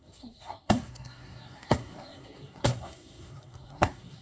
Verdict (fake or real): fake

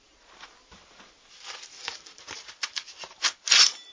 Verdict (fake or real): real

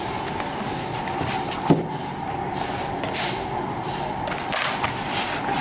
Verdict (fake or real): real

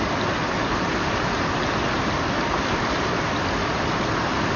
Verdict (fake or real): real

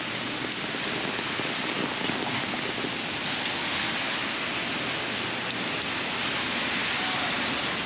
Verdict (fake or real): real